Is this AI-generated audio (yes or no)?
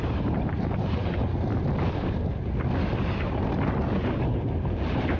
no